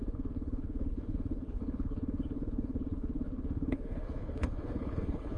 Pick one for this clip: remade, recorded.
remade